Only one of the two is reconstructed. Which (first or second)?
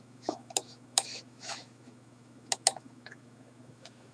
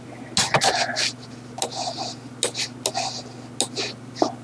first